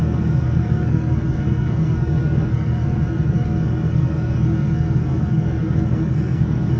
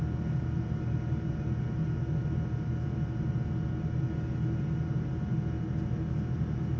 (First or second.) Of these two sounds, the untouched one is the second